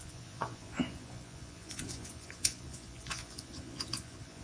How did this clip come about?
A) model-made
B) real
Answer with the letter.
A